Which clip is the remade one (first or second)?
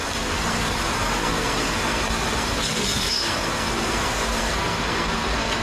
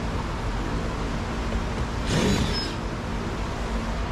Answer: first